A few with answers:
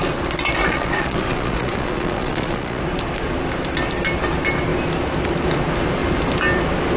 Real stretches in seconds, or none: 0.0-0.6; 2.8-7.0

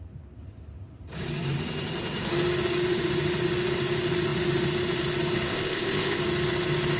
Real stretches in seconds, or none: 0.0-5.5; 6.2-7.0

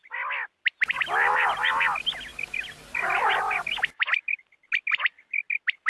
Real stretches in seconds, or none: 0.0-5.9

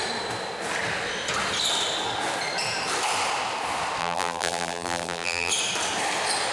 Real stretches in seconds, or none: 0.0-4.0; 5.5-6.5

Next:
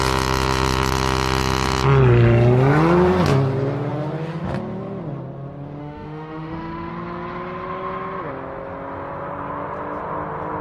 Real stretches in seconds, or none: 0.0-5.8; 6.9-10.6